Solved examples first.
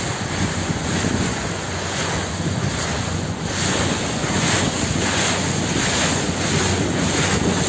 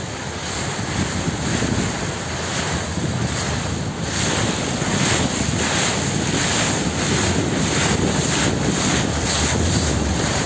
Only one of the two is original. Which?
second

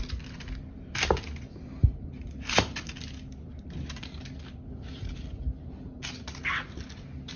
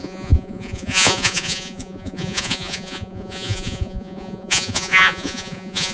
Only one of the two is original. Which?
first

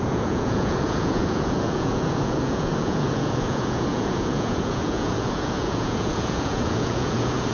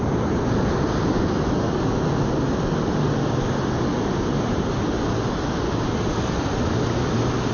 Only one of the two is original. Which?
second